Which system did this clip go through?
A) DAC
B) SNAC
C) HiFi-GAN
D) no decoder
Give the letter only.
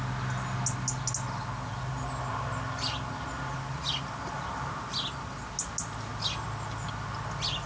D